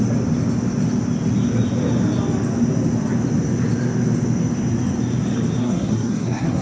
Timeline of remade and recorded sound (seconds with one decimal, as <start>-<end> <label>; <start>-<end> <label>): 0.0-5.6 recorded; 5.6-6.6 remade